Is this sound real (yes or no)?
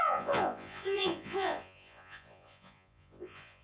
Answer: no